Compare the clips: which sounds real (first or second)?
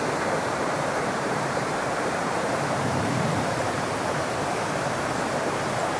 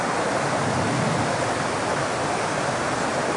second